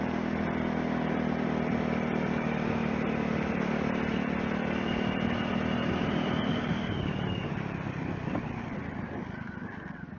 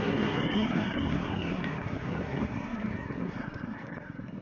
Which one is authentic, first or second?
first